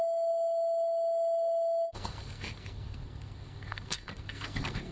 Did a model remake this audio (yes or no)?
yes